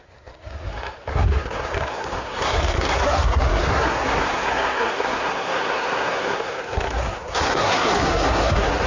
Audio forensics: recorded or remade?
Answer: remade